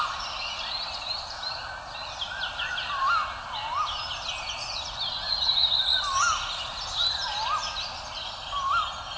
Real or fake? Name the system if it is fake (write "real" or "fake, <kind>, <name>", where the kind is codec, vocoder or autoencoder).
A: real